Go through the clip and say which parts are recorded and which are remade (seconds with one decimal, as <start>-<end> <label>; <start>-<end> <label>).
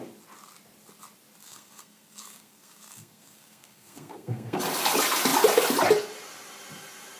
0.0-1.4 recorded; 1.4-4.6 remade; 4.6-7.2 recorded